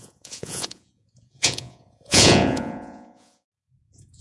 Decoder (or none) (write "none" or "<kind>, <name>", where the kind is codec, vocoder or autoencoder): vocoder, Vocos